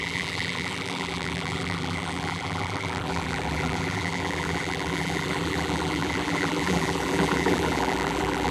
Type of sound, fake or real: fake